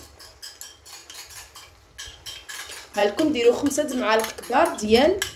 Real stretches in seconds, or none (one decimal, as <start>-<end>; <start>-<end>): 0.0-1.0; 1.7-5.4